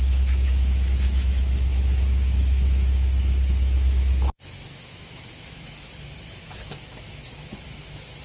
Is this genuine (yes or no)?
no